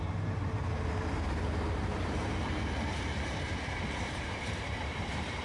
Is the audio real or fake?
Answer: fake